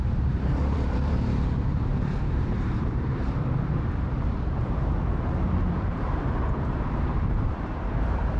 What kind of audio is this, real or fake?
fake